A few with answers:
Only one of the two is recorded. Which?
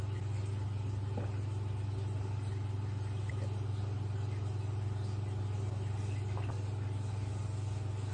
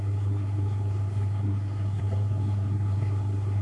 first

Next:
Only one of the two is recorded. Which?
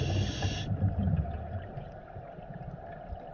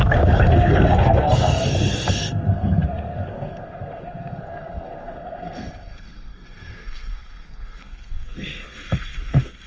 first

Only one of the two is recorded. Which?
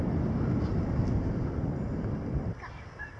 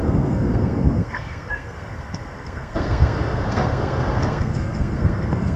first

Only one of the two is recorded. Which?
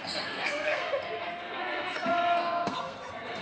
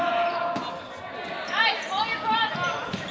second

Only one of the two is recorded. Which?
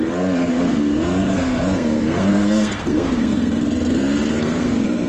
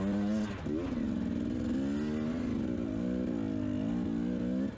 second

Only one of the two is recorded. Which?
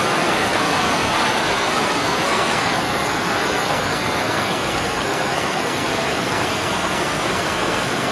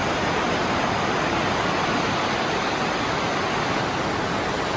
second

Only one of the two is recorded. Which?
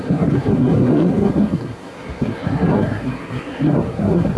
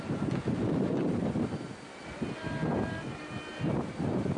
second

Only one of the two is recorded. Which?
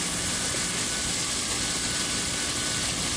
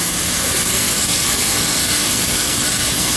first